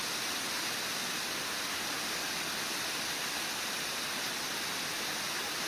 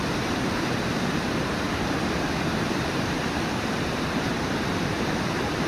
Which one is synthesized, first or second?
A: second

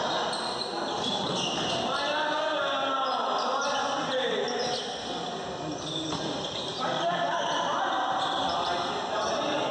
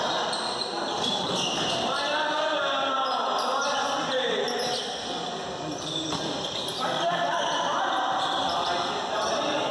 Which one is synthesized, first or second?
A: second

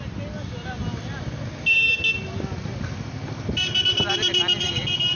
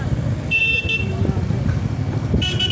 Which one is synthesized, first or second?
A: second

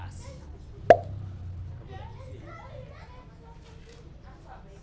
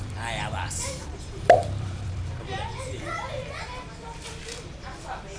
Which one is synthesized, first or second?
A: second